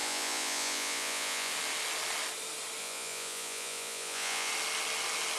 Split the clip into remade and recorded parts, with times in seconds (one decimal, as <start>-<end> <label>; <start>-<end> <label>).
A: 0.0-1.5 remade; 1.5-2.8 recorded; 2.8-4.5 remade; 4.5-5.4 recorded